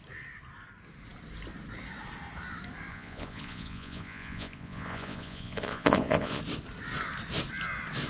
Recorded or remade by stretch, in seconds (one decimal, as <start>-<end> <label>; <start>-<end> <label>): 0.0-2.9 recorded; 2.9-6.4 remade; 6.4-8.1 recorded